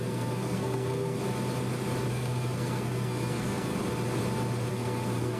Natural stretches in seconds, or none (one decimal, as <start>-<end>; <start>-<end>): 1.2-2.1; 3.7-4.7